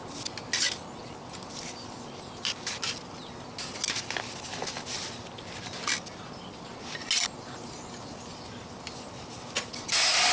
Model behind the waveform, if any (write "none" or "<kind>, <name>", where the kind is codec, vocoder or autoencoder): none